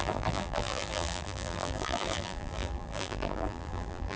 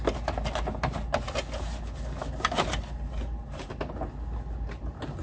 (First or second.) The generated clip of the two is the first